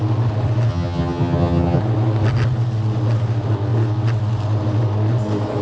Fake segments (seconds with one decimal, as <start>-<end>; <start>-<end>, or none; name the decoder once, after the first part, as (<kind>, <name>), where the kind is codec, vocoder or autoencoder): 0.7-1.8 (vocoder, HiFi-GAN)